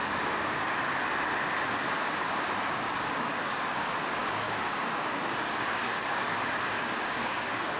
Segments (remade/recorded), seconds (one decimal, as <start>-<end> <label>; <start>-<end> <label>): 0.0-1.0 remade; 1.0-2.6 recorded; 2.6-7.8 remade